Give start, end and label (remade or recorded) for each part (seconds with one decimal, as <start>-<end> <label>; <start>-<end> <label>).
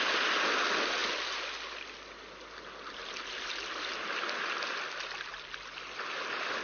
0.0-6.6 recorded